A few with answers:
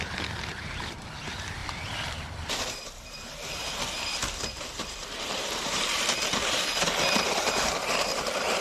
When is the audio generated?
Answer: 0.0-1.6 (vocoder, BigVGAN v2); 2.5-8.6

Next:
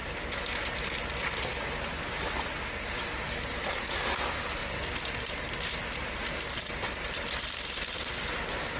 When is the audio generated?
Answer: 1.1-4.6 (vocoder, BigVGAN v2); 6.3-8.8